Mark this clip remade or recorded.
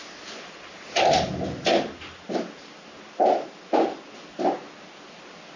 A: recorded